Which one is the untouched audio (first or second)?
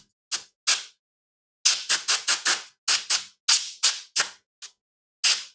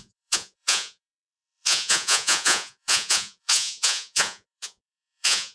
first